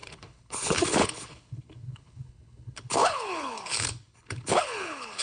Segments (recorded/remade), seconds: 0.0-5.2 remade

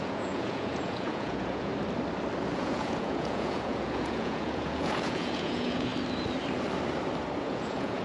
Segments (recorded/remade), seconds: 0.0-1.7 remade; 1.7-2.6 recorded; 2.6-5.9 remade; 5.9-7.4 recorded; 7.4-8.0 remade

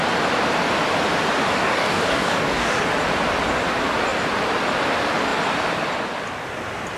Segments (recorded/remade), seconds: 0.0-1.6 recorded; 1.6-2.8 remade; 2.8-7.0 recorded

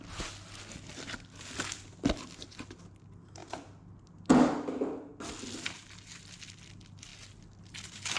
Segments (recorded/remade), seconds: 0.0-8.2 recorded

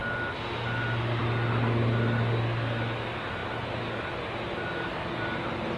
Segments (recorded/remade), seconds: 0.0-5.8 recorded

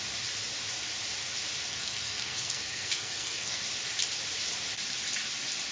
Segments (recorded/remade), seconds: 0.0-1.7 recorded; 1.7-3.6 remade; 3.6-5.7 recorded